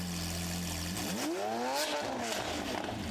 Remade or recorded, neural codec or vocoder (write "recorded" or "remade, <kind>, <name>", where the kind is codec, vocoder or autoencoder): recorded